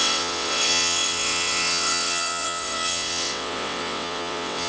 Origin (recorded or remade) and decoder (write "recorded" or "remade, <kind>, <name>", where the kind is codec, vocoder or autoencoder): remade, vocoder, WaveNeXt